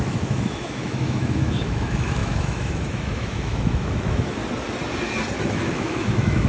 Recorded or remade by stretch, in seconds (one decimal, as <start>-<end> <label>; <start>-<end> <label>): 0.0-4.4 remade; 4.4-5.4 recorded; 5.4-6.5 remade